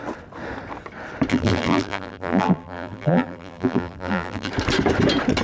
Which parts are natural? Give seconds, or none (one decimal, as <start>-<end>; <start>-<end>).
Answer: 0.0-1.3; 4.5-5.4